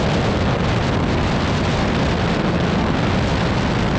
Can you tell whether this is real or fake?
real